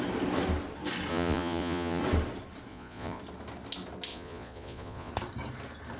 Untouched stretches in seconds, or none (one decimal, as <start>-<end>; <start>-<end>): 0.0-1.1; 2.0-2.7; 3.2-4.1; 5.1-6.0